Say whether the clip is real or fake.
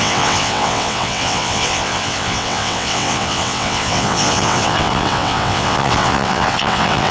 fake